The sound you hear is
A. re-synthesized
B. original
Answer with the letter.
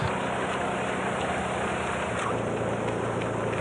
B